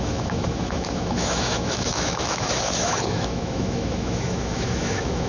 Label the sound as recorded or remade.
remade